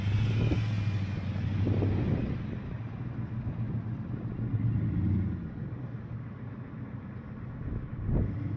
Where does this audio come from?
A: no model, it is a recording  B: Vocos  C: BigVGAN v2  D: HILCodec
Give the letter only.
A